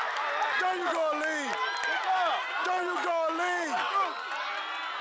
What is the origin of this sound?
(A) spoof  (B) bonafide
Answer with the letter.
B